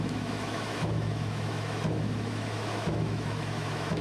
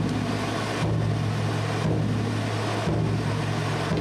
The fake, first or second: first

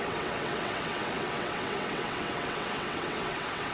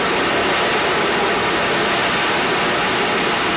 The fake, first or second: first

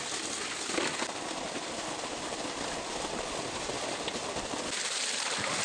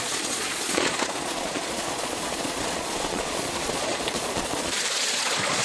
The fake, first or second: second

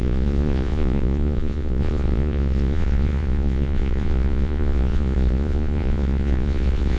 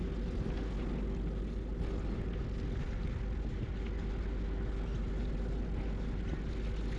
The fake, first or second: first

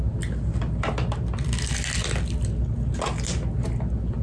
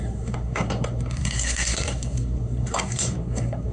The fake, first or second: second